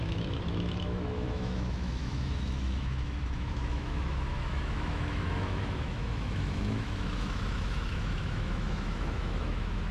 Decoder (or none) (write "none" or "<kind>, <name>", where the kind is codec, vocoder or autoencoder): autoencoder, DAC-VAE